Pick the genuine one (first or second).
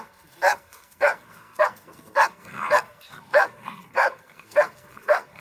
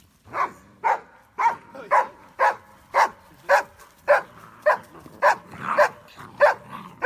second